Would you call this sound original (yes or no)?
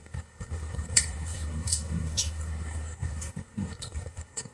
no